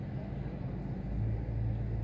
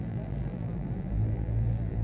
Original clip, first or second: first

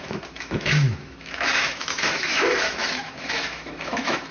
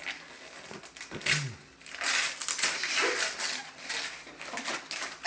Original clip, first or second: second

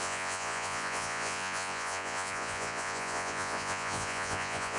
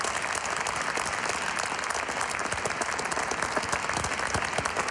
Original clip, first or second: second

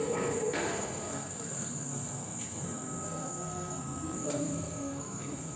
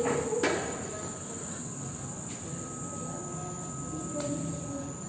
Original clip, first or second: second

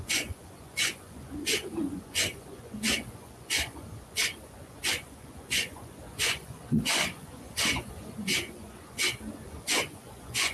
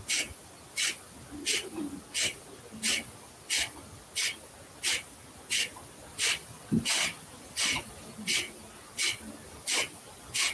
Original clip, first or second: second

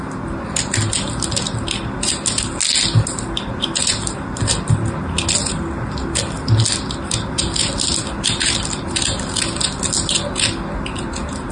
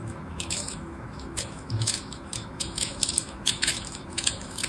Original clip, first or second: first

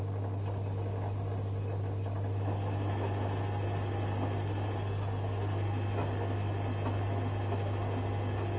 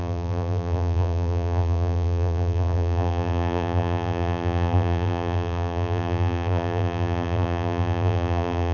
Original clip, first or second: first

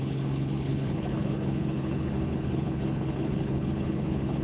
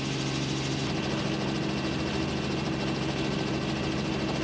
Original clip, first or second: second